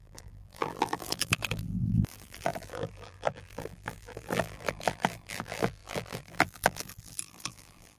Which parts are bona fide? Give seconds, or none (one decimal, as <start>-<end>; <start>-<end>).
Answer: none